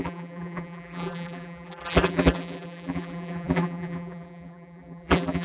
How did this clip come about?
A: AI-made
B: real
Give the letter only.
A